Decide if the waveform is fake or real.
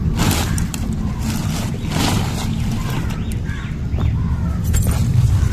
fake